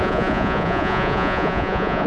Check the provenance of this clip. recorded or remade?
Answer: remade